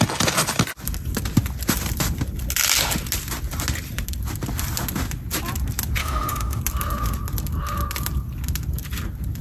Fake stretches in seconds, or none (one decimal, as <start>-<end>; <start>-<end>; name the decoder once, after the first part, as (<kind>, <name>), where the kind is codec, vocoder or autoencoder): 6.0-6.6 (autoencoder, DAC-VAE)